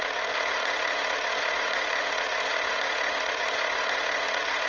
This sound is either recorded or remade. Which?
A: remade